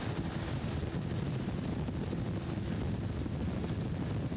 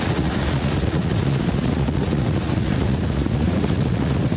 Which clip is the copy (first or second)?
second